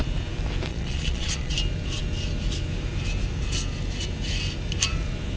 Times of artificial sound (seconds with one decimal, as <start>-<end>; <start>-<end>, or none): 0.7-1.6